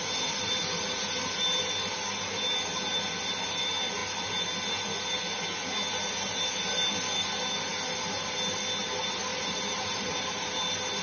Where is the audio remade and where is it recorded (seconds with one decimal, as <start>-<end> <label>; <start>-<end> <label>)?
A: 0.0-9.3 recorded; 9.3-10.6 remade; 10.6-11.0 recorded